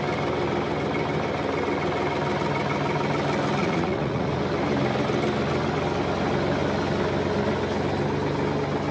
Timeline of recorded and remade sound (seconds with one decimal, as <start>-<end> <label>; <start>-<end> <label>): 0.0-3.6 recorded; 3.6-4.4 remade; 4.4-8.9 recorded

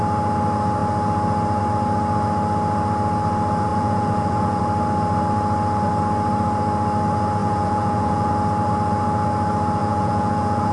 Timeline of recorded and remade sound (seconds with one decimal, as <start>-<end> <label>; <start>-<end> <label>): 0.0-3.7 recorded; 3.7-4.6 remade; 4.6-7.4 recorded; 7.4-8.3 remade; 8.3-9.8 recorded; 9.8-10.7 remade

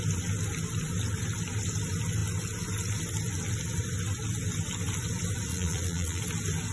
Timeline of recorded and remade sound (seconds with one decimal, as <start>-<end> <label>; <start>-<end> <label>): 0.0-5.5 recorded; 5.5-6.2 remade; 6.2-6.7 recorded

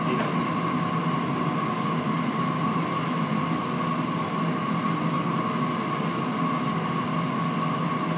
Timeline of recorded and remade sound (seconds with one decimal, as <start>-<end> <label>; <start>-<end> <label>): 0.0-8.2 recorded

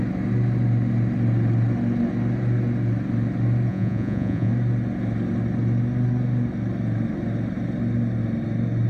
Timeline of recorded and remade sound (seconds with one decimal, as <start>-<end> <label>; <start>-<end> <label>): 0.0-3.7 recorded; 3.7-4.5 remade; 4.5-8.9 recorded